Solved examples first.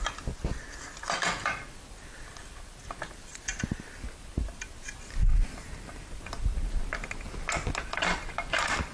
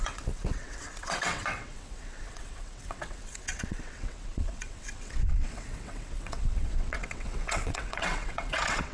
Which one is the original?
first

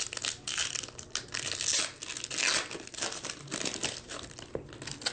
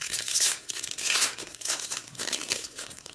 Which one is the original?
first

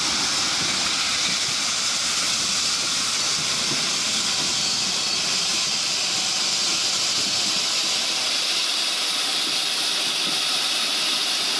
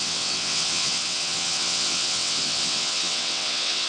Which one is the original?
first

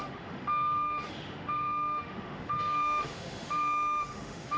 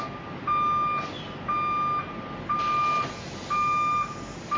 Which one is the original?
second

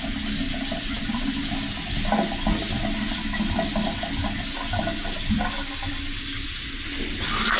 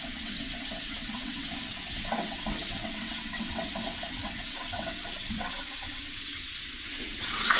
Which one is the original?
first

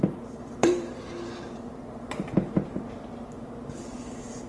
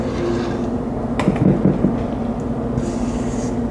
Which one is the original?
second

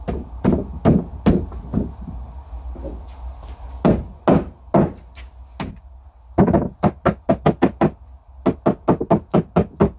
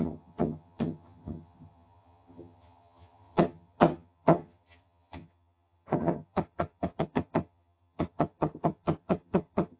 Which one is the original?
first